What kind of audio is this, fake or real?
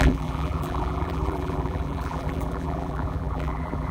fake